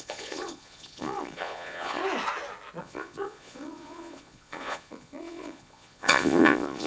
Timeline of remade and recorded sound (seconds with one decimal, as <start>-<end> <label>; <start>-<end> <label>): 0.0-2.0 remade; 2.0-2.8 recorded; 2.8-6.9 remade